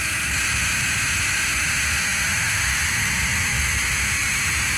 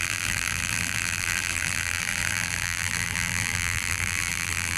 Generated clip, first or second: second